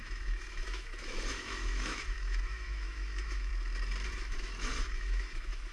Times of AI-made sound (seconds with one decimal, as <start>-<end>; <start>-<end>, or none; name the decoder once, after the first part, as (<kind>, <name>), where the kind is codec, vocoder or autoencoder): 0.0-3.5 (autoencoder, DAC-VAE); 4.1-5.7